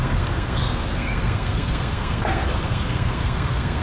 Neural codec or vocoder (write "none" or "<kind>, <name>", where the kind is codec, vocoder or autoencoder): codec, SNAC